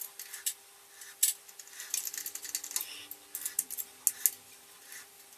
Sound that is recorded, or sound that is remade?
recorded